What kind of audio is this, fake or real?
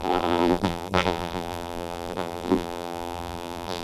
fake